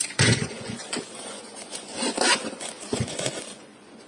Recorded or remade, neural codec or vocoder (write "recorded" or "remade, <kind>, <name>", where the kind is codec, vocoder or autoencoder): remade, vocoder, Vocos